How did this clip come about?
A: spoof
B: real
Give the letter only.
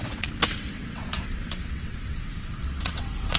A